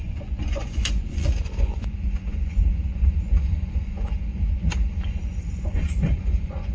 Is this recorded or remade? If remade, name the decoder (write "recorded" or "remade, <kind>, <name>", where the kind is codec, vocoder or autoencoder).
remade, vocoder, Vocos